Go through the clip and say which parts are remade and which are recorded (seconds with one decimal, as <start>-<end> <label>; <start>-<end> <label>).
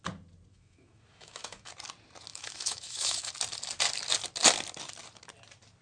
0.0-0.5 recorded; 0.5-1.7 remade; 1.7-2.3 recorded; 2.3-3.3 remade; 3.3-5.8 recorded